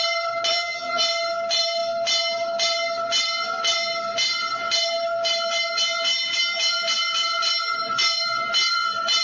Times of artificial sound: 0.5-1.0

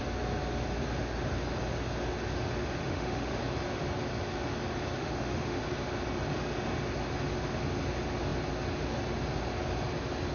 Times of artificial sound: 2.8-3.4; 5.0-5.6

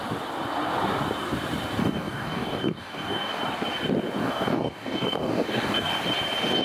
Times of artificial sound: 1.8-3.4; 4.2-5.9

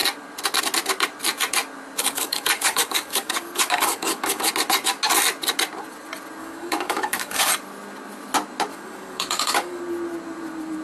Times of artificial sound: 2.0-4.5; 6.4-7.5; 8.7-9.8

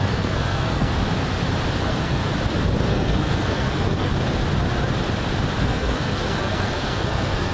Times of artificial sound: 0.0-0.9; 1.8-2.2; 2.9-4.1; 5.6-7.5

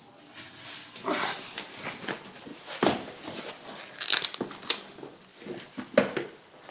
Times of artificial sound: 2.5-3.4; 5.3-6.7

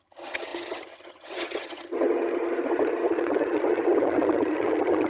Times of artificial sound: 0.0-5.1

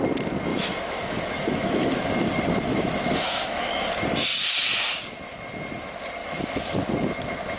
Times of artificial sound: 0.5-2.1; 2.7-3.7; 6.2-6.9